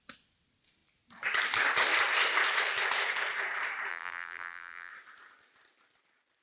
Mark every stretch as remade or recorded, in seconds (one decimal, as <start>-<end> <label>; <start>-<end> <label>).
0.0-3.9 recorded; 3.9-4.9 remade; 4.9-6.4 recorded